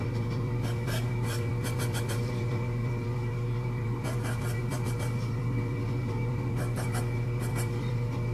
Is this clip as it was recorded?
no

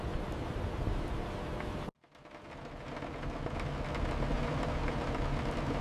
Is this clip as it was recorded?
yes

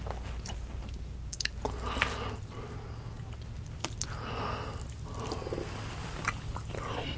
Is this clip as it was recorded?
yes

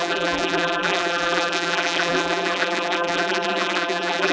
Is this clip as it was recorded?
no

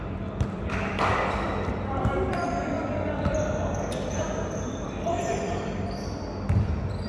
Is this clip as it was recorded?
no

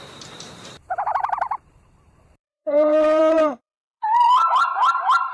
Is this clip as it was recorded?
no